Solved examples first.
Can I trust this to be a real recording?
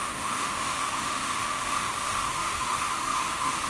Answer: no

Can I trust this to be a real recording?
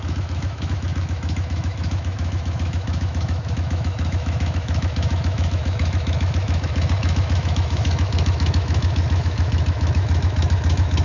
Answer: no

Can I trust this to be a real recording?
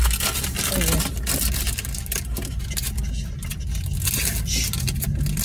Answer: yes